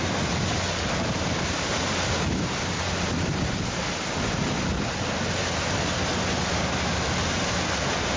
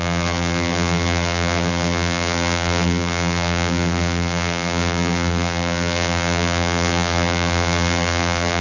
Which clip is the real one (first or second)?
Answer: first